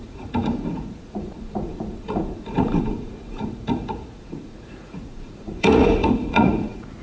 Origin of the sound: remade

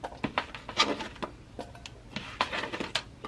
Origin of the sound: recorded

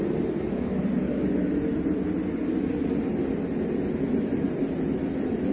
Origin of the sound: recorded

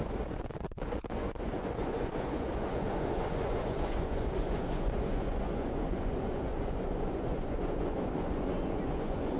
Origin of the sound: remade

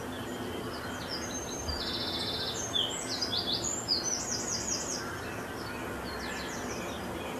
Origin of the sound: recorded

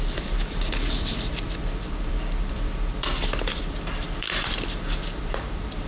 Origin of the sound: remade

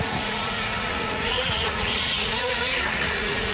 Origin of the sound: remade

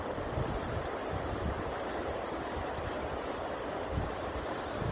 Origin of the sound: recorded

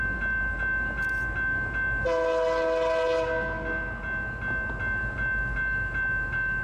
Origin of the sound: recorded